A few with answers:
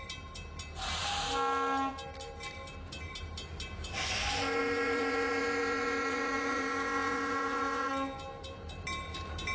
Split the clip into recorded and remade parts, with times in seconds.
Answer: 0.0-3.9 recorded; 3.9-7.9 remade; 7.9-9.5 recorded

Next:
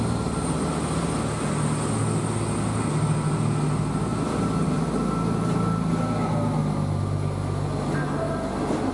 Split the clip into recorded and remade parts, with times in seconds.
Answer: 0.0-8.9 recorded

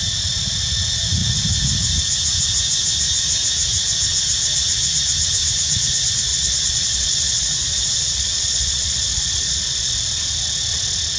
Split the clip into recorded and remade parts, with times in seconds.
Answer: 0.0-6.3 recorded; 6.3-9.9 remade; 9.9-11.2 recorded

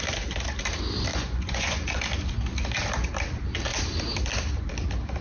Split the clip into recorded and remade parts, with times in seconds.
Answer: 0.0-1.1 recorded; 1.1-2.0 remade; 2.0-5.2 recorded

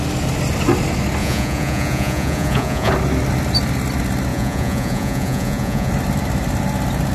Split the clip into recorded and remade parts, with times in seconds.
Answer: 0.0-1.2 recorded; 1.2-2.9 remade; 2.9-4.3 recorded; 4.3-5.9 remade; 5.9-7.1 recorded

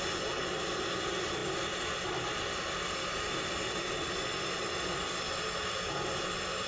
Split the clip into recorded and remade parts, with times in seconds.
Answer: 0.0-6.7 recorded